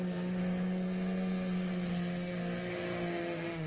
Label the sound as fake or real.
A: fake